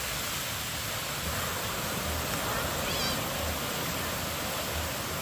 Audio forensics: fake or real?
real